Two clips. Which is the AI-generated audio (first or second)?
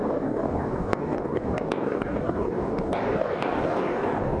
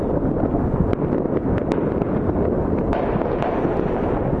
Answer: first